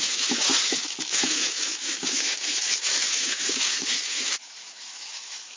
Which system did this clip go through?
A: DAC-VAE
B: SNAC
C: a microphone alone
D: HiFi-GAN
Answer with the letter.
A